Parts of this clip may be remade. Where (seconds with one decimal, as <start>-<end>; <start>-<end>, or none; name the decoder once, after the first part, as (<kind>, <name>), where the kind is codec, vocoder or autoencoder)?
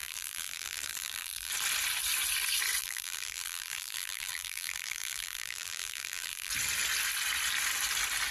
0.0-1.5 (vocoder, BigVGAN v2); 2.8-6.5